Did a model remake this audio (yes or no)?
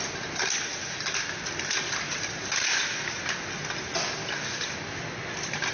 no